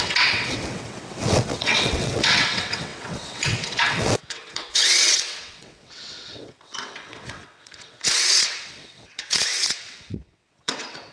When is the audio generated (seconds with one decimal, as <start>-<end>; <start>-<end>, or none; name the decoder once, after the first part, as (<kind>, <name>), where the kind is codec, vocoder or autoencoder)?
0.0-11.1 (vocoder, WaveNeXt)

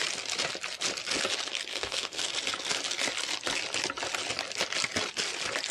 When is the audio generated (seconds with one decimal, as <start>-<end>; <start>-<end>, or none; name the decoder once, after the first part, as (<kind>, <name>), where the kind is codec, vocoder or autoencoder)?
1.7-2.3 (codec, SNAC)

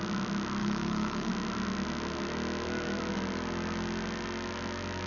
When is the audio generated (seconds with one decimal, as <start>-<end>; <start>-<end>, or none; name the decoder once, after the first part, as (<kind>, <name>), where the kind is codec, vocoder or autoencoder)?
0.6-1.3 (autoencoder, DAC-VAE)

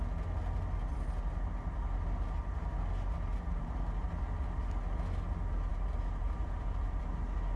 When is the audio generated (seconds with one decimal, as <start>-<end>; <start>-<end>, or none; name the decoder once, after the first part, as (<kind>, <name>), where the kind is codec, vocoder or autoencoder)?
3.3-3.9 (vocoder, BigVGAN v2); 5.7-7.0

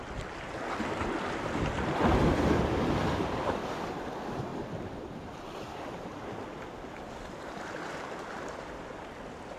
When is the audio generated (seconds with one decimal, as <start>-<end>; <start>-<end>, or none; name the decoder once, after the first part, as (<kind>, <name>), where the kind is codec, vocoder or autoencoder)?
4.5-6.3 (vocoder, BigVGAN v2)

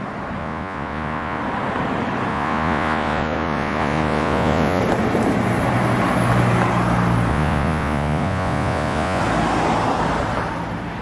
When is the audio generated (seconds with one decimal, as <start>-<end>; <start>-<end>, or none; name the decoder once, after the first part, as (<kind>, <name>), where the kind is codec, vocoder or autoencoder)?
0.4-1.4 (vocoder, Vocos); 2.3-4.8; 7.3-9.2

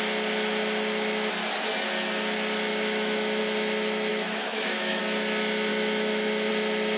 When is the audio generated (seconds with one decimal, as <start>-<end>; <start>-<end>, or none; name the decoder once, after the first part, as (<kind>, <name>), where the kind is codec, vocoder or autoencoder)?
2.7-3.4 (autoencoder, DAC-VAE); 4.1-5.0; 5.7-6.5

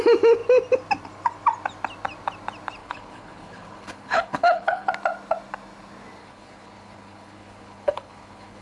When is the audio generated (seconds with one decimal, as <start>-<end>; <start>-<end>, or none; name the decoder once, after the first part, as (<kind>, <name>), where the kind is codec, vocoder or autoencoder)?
2.8-4.9 (codec, HILCodec); 6.2-8.6